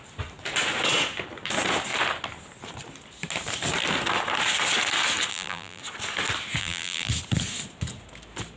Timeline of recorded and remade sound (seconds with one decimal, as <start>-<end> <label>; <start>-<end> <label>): 0.0-5.3 recorded; 5.3-5.8 remade; 5.8-6.6 recorded; 6.6-7.1 remade; 7.1-8.6 recorded